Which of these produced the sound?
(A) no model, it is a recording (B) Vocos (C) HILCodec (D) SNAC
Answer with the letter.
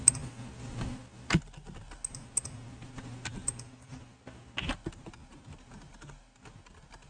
A